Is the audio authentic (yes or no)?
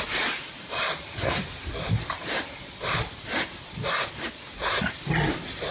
no